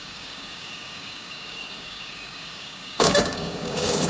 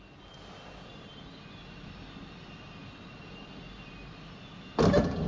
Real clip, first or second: second